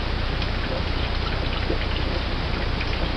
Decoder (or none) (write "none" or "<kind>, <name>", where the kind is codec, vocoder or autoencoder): none